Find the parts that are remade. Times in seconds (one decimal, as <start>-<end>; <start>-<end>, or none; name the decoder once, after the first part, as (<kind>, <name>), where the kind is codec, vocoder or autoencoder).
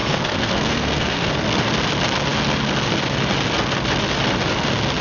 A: 0.0-1.3 (codec, SNAC)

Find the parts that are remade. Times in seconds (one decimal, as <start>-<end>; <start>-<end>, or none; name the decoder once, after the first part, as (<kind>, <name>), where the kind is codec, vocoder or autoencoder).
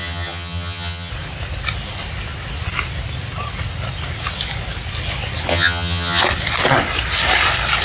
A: 0.0-1.1 (vocoder, HiFi-GAN); 5.5-6.2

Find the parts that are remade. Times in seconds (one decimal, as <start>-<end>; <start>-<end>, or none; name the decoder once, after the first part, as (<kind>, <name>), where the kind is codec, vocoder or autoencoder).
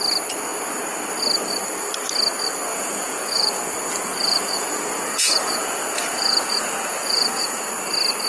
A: 2.7-7.6 (vocoder, Vocos)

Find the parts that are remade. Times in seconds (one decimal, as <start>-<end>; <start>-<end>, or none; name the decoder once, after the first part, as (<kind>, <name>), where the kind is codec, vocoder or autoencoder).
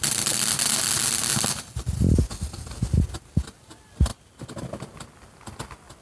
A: none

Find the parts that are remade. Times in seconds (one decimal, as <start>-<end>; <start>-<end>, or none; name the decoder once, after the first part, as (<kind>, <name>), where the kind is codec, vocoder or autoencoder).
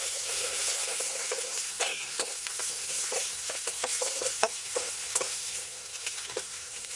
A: 0.0-7.0 (codec, SNAC)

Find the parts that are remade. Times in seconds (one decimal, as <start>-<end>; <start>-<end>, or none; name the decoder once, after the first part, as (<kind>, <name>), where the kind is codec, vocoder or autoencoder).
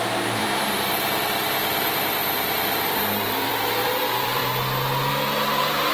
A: 0.0-4.4 (vocoder, BigVGAN v2); 5.1-5.9